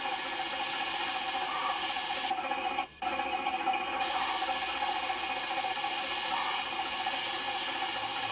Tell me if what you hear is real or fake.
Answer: real